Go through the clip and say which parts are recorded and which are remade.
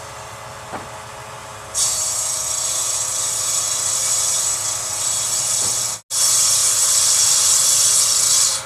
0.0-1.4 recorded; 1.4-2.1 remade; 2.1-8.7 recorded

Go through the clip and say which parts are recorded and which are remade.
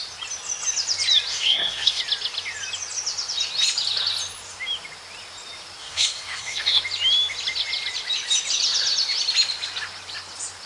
0.0-1.3 recorded; 1.3-2.0 remade; 2.0-5.8 recorded; 5.8-6.8 remade; 6.8-10.7 recorded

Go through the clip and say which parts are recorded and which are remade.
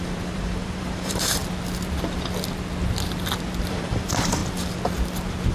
0.0-1.4 remade; 1.4-3.7 recorded; 3.7-4.4 remade; 4.4-5.5 recorded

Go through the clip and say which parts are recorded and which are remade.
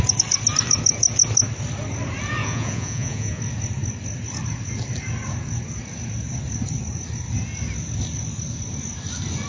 0.0-2.4 recorded; 2.4-3.4 remade; 3.4-9.5 recorded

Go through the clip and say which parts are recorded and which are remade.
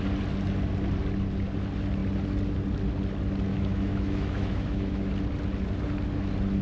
0.0-3.5 recorded; 3.5-5.1 remade; 5.1-6.6 recorded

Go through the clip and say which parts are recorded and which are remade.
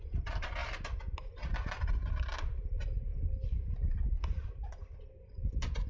0.0-5.9 recorded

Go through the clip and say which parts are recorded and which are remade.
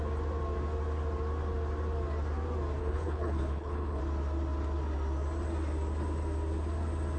0.0-2.8 recorded; 2.8-4.0 remade; 4.0-7.2 recorded